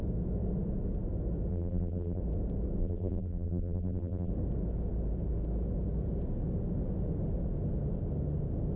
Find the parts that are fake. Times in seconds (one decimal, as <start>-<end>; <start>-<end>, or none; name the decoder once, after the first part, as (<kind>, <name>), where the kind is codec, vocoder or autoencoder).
1.5-2.2 (vocoder, BigVGAN v2); 2.8-4.3